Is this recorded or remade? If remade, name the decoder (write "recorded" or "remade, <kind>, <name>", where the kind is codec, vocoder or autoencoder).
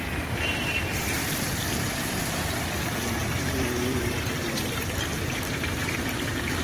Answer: remade, vocoder, BigVGAN v2